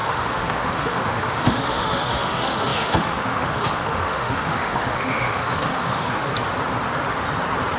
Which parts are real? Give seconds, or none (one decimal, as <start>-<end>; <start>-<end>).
6.3-7.8